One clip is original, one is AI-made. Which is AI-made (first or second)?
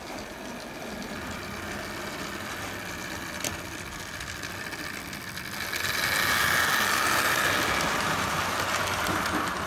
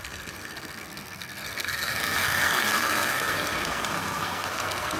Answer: second